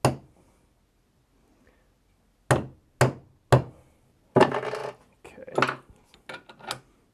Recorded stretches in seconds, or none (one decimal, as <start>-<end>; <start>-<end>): 0.0-7.1